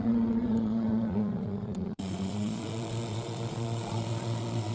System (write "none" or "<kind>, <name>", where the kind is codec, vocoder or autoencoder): vocoder, Vocos